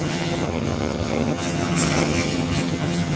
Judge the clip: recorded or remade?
remade